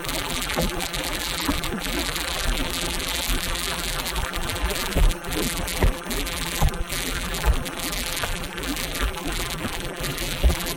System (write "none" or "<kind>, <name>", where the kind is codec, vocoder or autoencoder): vocoder, BigVGAN v2